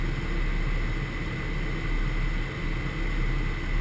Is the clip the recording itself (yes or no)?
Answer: yes